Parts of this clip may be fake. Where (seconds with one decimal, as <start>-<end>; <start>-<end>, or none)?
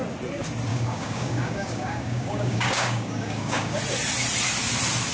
0.7-3.8